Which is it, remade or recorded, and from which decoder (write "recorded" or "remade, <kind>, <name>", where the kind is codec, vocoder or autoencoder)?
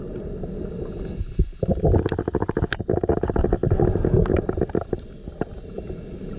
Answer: recorded